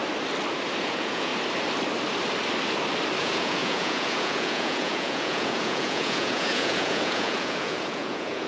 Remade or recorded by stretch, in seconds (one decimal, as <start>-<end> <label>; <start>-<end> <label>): 0.0-0.8 recorded; 0.8-1.3 remade; 1.3-3.2 recorded; 3.2-8.5 remade